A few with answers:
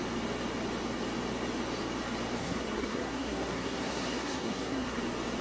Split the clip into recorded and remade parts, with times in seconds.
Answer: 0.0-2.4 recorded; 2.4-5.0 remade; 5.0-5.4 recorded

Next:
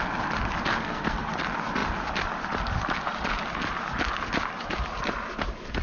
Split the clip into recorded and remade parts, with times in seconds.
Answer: 0.0-0.7 recorded; 0.7-1.3 remade; 1.3-5.8 recorded